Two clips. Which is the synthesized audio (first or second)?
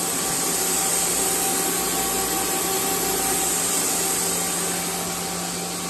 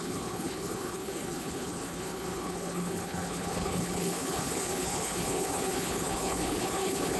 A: second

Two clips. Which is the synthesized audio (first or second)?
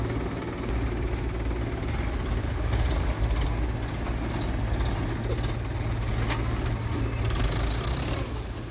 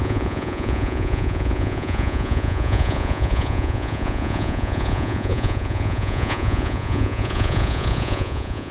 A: second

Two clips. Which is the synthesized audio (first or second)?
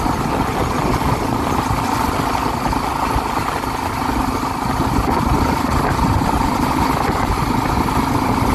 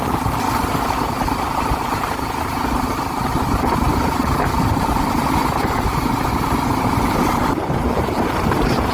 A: second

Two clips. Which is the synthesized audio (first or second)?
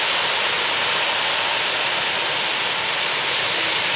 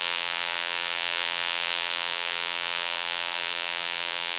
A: second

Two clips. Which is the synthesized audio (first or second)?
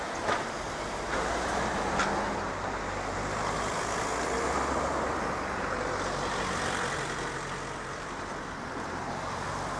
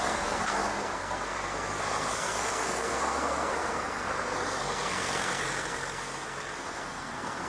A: second